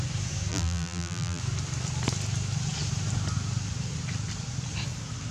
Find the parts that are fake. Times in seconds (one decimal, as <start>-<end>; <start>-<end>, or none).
0.5-1.4